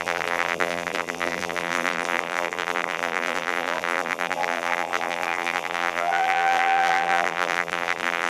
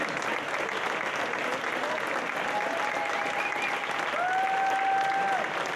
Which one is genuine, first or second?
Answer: second